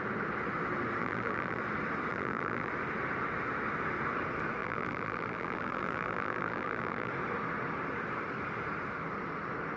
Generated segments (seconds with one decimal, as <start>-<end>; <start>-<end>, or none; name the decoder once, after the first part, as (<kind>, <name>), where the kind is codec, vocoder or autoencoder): 1.0-1.6 (vocoder, BigVGAN v2); 2.1-2.7; 4.6-7.1